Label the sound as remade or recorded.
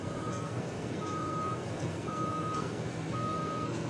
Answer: remade